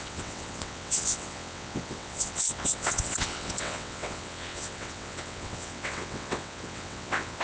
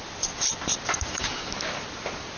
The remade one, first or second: first